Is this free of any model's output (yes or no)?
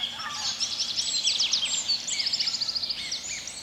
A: yes